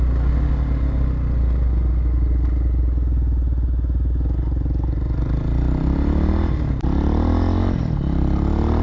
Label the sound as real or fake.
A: real